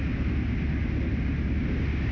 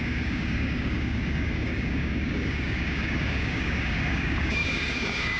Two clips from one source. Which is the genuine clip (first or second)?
first